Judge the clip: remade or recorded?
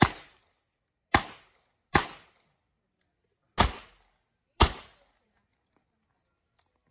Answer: recorded